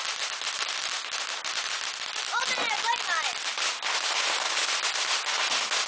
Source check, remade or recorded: recorded